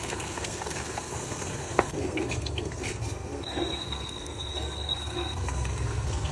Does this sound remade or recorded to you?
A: remade